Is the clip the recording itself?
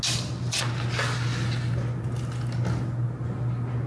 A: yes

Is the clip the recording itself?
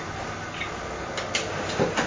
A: yes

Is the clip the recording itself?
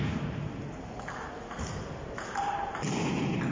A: yes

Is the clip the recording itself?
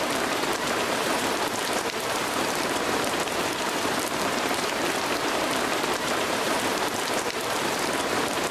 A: no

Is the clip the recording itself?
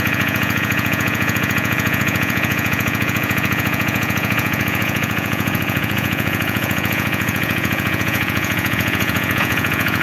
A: no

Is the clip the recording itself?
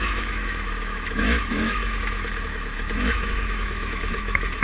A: no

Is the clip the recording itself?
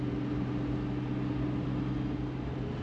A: yes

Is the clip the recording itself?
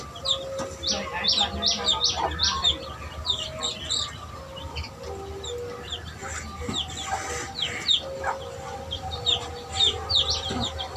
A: yes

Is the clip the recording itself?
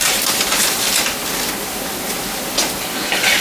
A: yes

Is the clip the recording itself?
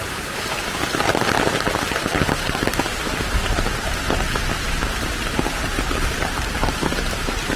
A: no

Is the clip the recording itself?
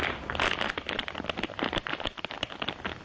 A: yes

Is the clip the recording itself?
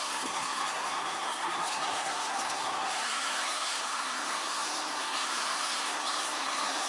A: no